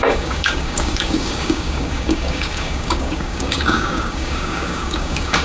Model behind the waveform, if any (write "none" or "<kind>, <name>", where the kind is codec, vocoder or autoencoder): codec, DAC